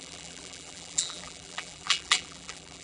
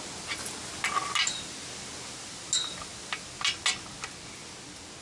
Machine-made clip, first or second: first